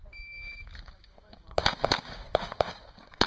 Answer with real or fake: fake